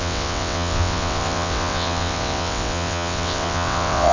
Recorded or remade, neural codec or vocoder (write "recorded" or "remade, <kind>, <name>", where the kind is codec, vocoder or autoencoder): remade, vocoder, WaveNeXt